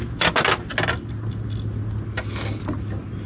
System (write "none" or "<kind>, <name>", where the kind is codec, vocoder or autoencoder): none